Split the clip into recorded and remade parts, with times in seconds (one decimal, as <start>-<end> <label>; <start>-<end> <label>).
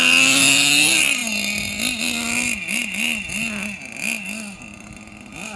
0.0-5.6 recorded